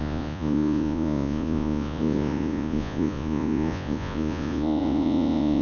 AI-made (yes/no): yes